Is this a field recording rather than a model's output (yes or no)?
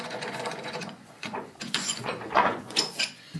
no